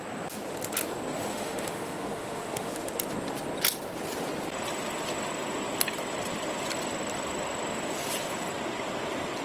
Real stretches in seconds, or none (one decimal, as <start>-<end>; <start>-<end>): 0.0-1.3; 2.9-9.4